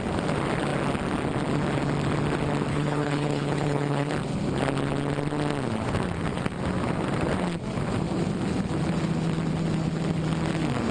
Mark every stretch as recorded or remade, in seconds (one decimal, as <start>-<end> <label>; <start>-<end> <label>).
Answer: 0.0-2.7 recorded; 2.7-4.1 remade; 4.1-10.9 recorded